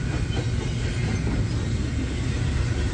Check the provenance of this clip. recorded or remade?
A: recorded